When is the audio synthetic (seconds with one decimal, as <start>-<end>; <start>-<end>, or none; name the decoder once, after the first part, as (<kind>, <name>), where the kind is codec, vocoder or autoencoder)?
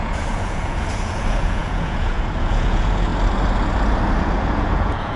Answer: 0.0-3.1 (vocoder, Vocos); 4.2-5.2